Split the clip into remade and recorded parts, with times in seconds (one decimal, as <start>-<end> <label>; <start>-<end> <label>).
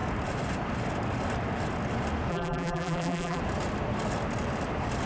0.0-2.3 recorded; 2.3-3.4 remade; 3.4-5.1 recorded